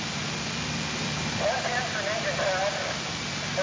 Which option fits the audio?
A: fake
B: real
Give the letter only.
B